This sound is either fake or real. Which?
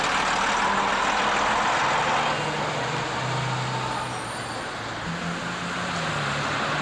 real